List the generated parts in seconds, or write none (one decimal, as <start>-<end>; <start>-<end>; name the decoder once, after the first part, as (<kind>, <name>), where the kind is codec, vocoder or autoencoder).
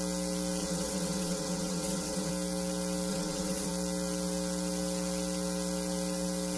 0.6-2.3 (vocoder, WaveNeXt); 3.1-3.7